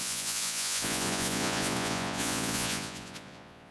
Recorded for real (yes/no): no